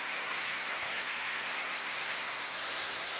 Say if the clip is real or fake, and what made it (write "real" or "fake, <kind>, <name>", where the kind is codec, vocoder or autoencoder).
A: fake, codec, SNAC